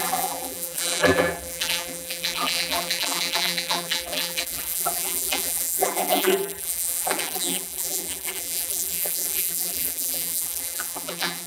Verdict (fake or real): fake